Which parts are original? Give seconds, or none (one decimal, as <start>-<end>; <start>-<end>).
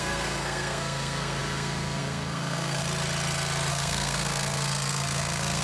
2.8-3.7